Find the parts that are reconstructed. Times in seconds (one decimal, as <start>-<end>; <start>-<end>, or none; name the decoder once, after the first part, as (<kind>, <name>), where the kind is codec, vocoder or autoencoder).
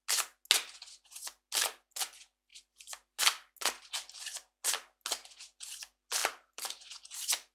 2.5-3.2 (vocoder, BigVGAN v2); 6.2-6.7